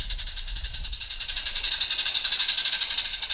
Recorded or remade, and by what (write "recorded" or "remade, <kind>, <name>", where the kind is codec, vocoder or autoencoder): recorded